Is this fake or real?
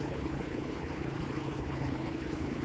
fake